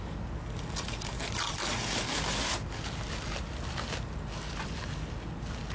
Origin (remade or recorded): recorded